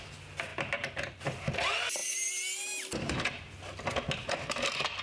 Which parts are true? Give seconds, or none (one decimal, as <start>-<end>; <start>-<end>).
0.0-5.0